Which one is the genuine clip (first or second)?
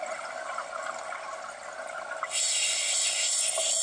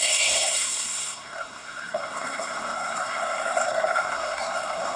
first